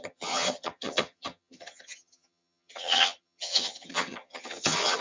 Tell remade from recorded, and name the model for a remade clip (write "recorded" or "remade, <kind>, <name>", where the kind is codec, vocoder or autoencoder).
remade, vocoder, HiFi-GAN